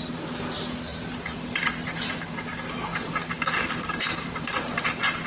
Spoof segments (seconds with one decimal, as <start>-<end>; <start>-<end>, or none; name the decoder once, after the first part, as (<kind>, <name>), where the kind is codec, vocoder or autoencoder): 0.9-2.3 (vocoder, BigVGAN v2); 2.9-4.8